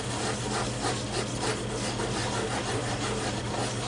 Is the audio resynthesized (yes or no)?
no